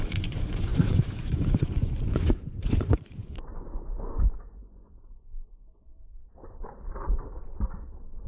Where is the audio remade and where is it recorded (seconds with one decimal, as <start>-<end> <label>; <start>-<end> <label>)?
0.0-5.9 remade; 5.9-8.3 recorded